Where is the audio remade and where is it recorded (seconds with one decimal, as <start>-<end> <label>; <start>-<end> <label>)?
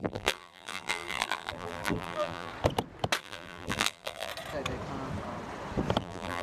0.0-2.5 remade; 2.5-3.2 recorded; 3.2-4.3 remade; 4.3-6.0 recorded; 6.0-6.4 remade